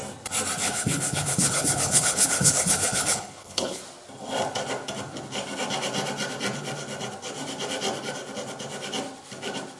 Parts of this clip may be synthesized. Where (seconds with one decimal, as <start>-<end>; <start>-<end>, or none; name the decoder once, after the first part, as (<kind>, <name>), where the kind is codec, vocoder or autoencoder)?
0.6-3.8 (codec, HILCodec)